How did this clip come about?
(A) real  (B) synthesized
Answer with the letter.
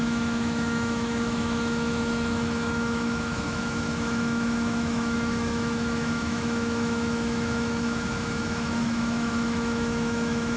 B